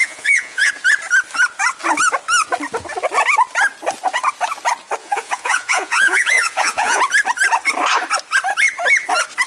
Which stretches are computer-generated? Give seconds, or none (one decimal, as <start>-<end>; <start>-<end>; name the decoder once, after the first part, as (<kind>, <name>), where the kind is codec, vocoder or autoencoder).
0.0-0.7 (vocoder, Vocos); 5.0-7.0